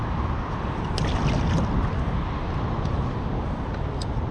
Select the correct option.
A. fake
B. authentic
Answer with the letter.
B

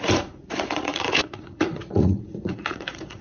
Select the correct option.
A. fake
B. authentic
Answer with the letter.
A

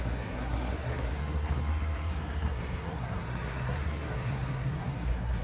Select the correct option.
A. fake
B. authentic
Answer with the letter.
A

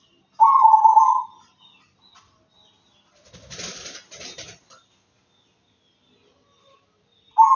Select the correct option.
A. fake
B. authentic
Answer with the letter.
B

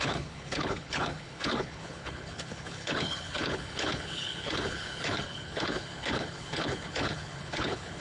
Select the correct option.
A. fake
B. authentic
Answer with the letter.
A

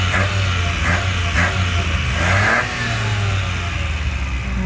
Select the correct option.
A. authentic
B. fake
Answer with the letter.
A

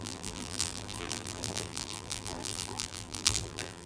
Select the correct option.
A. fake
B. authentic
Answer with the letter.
A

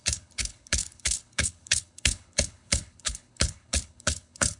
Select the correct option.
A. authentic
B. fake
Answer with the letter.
B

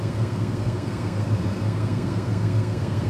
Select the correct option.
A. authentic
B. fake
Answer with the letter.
B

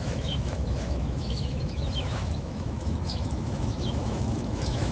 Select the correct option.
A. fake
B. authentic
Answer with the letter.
A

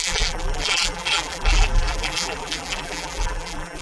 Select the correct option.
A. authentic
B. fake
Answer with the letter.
B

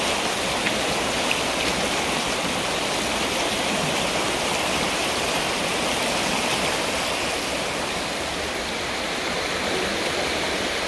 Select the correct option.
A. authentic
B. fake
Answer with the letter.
A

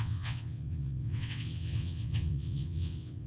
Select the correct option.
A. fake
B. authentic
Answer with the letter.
A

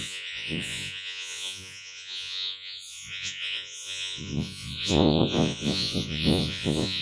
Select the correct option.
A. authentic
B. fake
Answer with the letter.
B